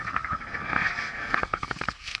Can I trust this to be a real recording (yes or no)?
no